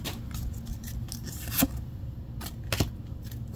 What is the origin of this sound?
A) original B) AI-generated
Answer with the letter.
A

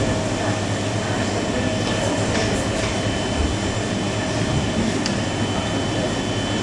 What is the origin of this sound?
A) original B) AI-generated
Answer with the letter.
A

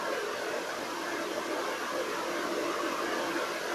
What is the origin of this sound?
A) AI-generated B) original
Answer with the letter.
B